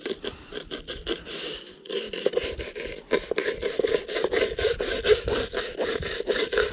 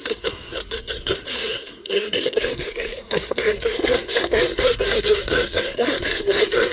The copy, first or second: second